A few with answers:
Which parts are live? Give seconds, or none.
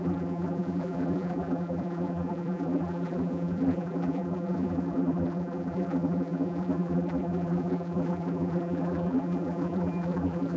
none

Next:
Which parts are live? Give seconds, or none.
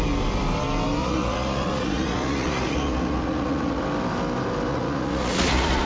0.0-1.0; 3.8-4.7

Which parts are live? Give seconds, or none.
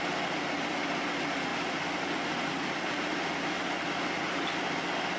0.0-5.2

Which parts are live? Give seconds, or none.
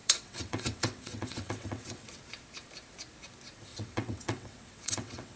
2.2-3.7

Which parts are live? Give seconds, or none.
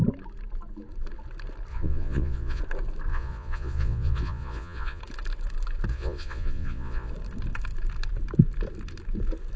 0.0-1.7; 2.6-3.1; 5.0-5.9; 7.1-9.6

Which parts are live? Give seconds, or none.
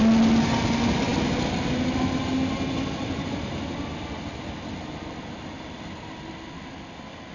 0.0-7.3